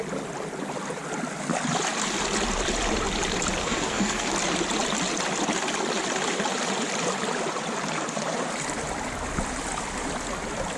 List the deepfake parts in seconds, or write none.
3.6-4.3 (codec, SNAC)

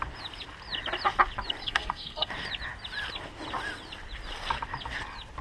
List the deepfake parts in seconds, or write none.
1.6-2.3 (codec, SNAC)

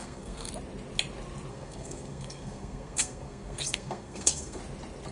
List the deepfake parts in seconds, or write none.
0.0-0.5 (codec, SNAC); 1.5-4.6

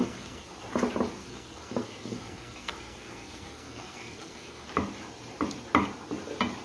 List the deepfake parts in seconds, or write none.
0.0-0.5 (codec, SNAC); 1.2-4.7

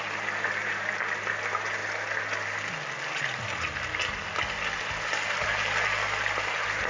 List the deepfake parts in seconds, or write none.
none

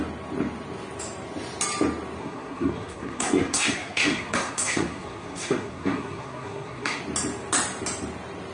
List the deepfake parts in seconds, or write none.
2.2-7.0 (codec, SNAC)

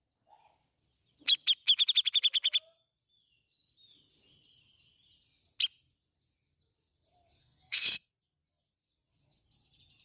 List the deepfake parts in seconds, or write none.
7.4-8.1 (codec, SNAC)